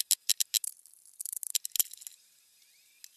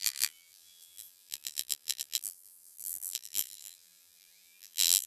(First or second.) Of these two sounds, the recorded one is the first